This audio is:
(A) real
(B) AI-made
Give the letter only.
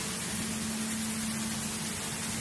A